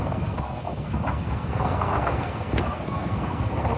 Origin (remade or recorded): remade